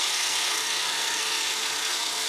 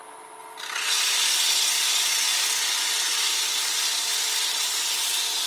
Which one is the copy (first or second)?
first